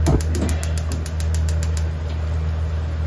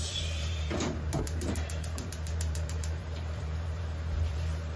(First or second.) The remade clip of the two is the second